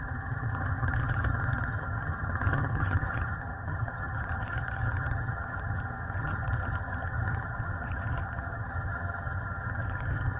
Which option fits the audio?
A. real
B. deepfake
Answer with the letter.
B